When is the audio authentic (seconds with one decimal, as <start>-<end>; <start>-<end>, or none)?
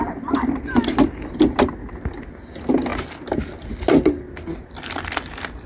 0.0-5.7